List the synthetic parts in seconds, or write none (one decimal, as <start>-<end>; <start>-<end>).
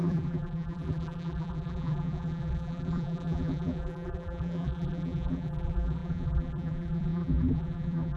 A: 0.0-8.2